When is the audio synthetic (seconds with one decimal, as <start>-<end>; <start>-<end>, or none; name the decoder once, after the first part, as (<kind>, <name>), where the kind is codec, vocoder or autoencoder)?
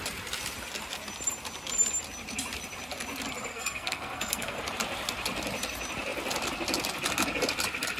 3.5-4.6 (codec, SNAC)